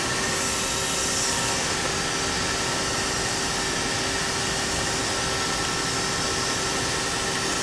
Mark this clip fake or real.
real